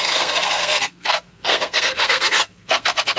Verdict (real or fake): fake